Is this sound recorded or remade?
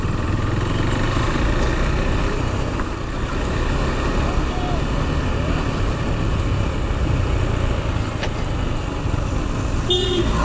recorded